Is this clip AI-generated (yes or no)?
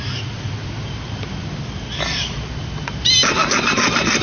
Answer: no